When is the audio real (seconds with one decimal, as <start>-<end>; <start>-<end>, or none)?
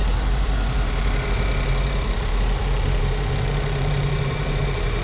none